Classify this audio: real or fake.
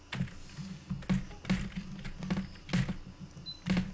real